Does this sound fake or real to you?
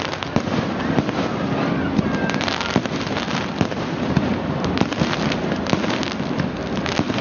fake